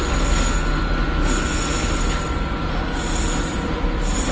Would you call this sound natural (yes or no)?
yes